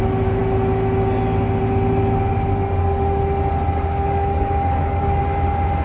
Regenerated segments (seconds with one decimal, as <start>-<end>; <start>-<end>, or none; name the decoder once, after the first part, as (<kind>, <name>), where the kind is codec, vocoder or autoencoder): 3.7-5.2 (codec, DAC)